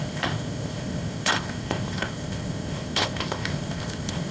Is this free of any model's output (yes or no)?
no